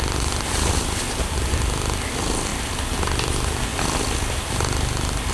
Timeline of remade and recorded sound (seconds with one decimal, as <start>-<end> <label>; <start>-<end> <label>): 0.0-5.3 recorded